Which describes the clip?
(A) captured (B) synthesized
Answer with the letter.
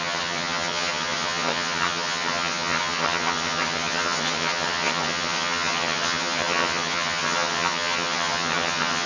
B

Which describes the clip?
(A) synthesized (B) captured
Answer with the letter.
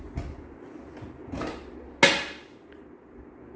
B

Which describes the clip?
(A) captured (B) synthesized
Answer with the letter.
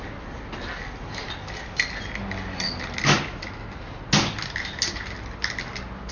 A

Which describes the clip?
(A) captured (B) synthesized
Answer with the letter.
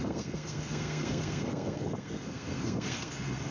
B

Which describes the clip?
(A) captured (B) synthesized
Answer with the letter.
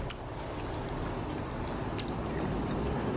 A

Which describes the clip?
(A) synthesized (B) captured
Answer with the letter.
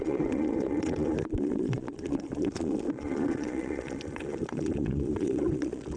A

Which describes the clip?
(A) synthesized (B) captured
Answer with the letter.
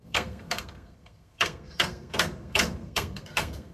A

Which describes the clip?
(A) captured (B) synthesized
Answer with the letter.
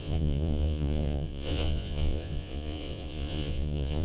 B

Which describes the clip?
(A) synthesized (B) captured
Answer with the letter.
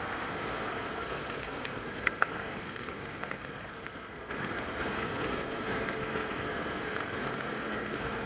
A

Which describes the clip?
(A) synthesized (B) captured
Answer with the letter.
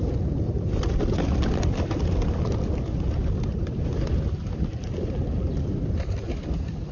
B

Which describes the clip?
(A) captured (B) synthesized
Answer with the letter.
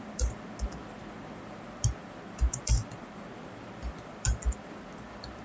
A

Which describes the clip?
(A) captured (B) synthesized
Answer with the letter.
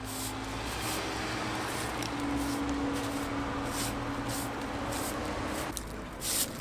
A